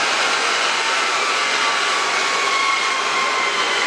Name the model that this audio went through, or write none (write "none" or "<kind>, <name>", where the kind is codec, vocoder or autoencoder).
vocoder, Vocos